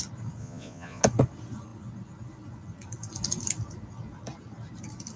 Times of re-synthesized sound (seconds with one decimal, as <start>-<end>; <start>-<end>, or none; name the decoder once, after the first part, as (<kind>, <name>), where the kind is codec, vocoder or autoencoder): 0.4-1.0 (vocoder, Vocos)